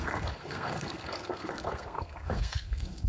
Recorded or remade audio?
remade